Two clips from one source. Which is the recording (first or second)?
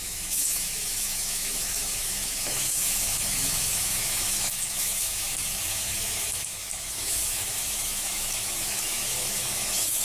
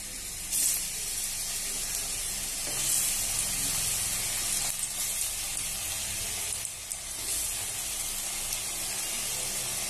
second